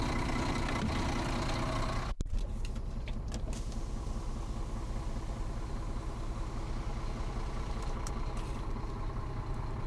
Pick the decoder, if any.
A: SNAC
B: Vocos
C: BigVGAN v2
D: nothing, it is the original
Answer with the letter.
D